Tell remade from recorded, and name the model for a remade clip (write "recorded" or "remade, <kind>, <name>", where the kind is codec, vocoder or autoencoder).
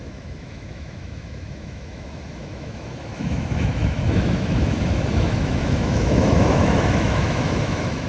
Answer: remade, autoencoder, DAC-VAE